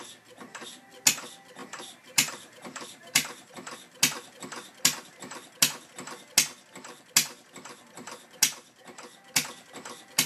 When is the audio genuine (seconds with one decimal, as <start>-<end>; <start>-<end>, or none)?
0.0-1.6; 3.5-10.3